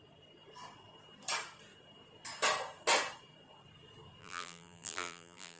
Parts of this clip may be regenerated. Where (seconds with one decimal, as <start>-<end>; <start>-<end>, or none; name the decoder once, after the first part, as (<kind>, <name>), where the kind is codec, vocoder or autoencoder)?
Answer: 4.2-5.6 (vocoder, BigVGAN v2)